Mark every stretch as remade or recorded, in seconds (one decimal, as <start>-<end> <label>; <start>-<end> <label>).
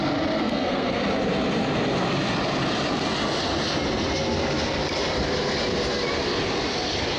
0.0-0.4 recorded; 0.4-1.0 remade; 1.0-7.2 recorded